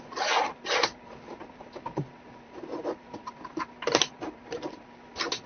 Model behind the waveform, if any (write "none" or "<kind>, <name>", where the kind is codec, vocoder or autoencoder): none